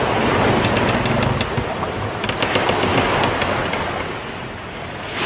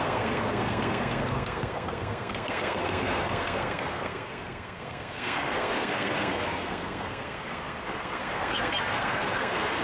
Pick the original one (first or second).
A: first